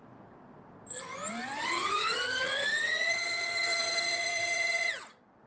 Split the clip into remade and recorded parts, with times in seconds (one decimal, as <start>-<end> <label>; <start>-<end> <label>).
0.0-1.6 recorded; 1.6-4.9 remade; 4.9-5.5 recorded